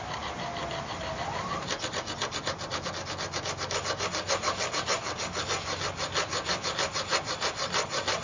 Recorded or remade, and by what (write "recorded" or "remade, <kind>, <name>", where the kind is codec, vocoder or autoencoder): recorded